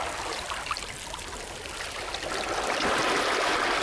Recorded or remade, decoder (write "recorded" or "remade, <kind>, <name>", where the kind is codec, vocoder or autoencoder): recorded